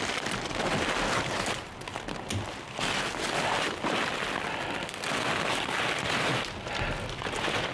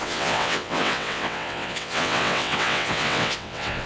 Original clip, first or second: first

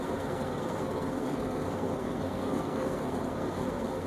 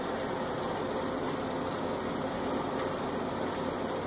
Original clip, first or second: second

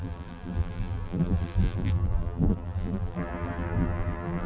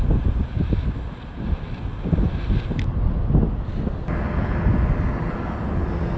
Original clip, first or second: second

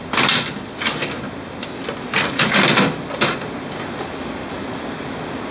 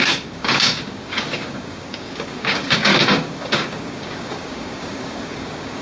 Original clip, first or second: first